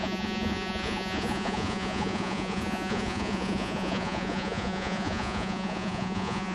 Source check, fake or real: fake